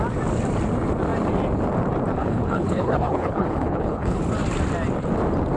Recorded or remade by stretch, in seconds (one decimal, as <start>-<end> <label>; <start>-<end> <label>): 0.0-2.2 recorded; 2.2-4.2 remade; 4.2-5.6 recorded